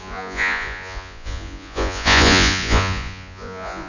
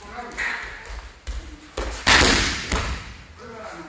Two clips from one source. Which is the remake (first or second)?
first